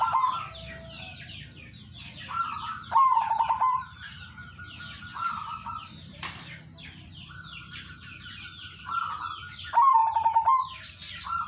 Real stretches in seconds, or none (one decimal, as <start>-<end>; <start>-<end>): 0.0-11.5